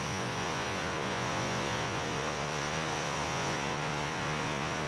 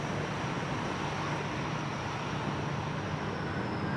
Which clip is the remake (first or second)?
first